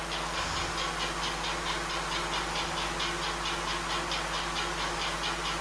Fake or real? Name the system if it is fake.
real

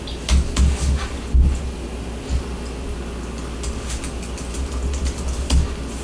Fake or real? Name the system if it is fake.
real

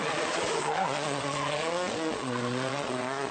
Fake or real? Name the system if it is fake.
fake, vocoder, Vocos